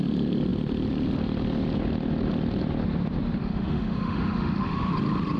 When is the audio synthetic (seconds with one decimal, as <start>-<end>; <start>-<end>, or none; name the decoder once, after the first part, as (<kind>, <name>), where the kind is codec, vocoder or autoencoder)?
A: 3.4-4.9 (autoencoder, DAC-VAE)